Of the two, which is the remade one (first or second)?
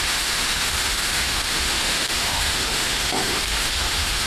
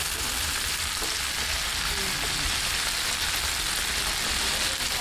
first